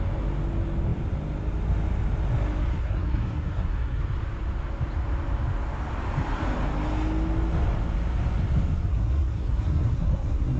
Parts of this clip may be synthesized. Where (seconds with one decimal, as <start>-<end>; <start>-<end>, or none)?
2.7-4.0; 8.9-10.6